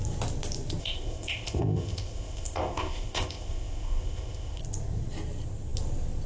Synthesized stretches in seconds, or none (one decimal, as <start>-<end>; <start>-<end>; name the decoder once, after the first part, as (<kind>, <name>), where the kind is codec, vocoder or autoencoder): 0.8-4.6 (codec, ZipCodec)